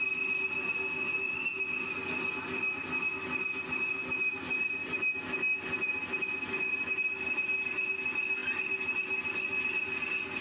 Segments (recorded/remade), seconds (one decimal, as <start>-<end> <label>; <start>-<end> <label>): 0.0-10.4 recorded

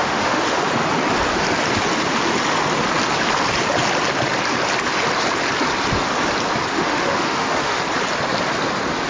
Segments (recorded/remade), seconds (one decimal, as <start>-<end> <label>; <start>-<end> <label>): 0.0-0.6 remade; 0.6-6.7 recorded; 6.7-7.8 remade; 7.8-9.1 recorded

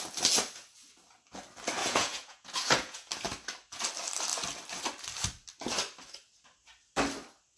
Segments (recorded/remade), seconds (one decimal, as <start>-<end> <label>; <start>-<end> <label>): 0.0-1.8 recorded; 1.8-3.1 remade; 3.1-7.6 recorded

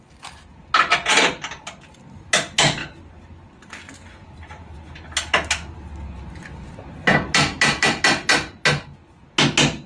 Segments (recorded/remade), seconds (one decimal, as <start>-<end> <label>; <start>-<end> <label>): 0.0-9.9 recorded

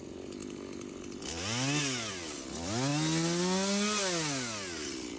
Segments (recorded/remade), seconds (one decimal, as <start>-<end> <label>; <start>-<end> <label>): 0.0-5.2 recorded

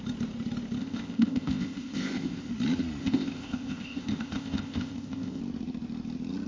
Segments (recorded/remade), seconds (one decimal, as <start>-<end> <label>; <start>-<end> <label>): 0.0-0.8 recorded; 0.8-2.5 remade; 2.5-3.0 recorded; 3.0-5.4 remade; 5.4-6.5 recorded

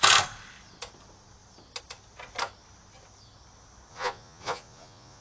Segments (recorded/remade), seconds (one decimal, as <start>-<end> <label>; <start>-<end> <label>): 0.0-3.9 recorded; 3.9-5.2 remade